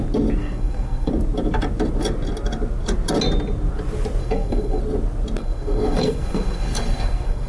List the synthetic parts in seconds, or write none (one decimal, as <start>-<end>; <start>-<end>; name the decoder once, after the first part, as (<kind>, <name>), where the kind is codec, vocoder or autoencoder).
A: 0.4-1.1 (codec, SNAC); 4.2-4.8; 5.4-7.5